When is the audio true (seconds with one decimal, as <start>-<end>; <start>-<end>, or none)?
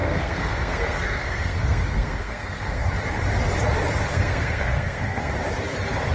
2.9-4.1; 5.3-6.1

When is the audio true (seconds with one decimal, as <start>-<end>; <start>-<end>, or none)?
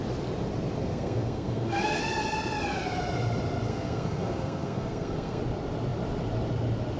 0.0-0.8; 2.0-3.7; 5.4-7.0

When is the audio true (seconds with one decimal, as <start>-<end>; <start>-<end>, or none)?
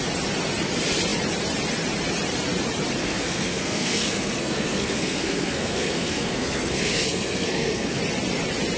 0.0-3.0; 8.0-8.8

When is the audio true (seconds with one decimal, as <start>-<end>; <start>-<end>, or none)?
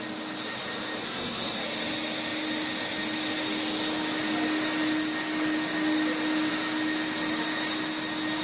0.0-1.0; 1.6-8.4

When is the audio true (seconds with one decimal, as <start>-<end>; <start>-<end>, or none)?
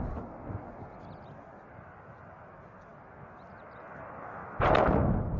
0.0-5.4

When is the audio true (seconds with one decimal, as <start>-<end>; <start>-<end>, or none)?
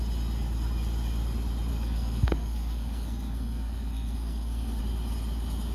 0.0-1.7; 4.8-5.7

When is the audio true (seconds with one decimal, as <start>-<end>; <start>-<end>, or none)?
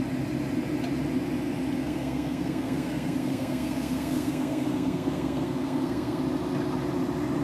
0.0-1.8; 6.2-7.4